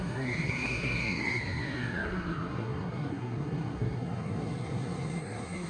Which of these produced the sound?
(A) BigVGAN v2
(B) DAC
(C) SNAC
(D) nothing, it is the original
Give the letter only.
C